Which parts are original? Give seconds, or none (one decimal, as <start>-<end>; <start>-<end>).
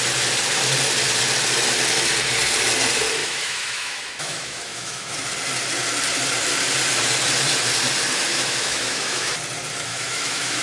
0.0-3.2; 5.1-8.3; 9.3-9.9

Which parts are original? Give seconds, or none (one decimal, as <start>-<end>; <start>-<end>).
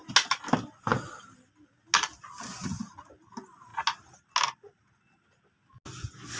0.0-6.4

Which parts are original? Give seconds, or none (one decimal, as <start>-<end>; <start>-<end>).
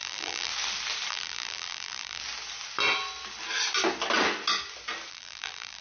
0.5-1.1; 2.2-5.1